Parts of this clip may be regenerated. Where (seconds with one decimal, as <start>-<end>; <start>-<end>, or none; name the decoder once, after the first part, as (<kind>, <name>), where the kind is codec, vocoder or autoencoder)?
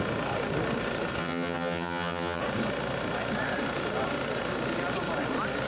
1.2-2.4 (vocoder, HiFi-GAN)